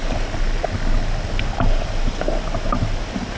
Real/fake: real